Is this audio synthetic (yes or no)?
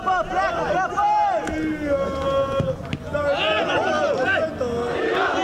no